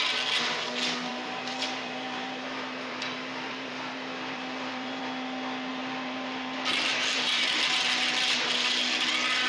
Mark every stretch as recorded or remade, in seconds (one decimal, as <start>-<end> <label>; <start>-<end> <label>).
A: 0.0-1.1 recorded; 1.1-5.0 remade; 5.0-5.7 recorded; 5.7-7.6 remade; 7.6-9.5 recorded